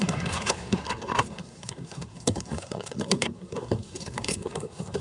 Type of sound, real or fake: fake